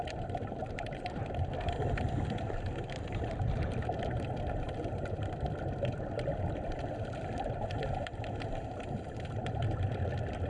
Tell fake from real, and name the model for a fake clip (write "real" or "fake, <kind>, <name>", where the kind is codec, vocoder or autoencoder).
fake, vocoder, BigVGAN v2